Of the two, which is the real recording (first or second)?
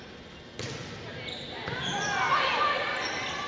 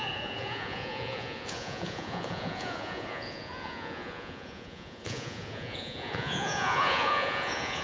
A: first